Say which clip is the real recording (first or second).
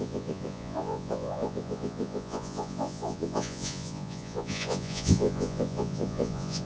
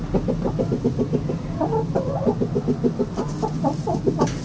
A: second